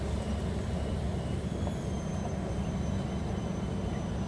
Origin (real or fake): real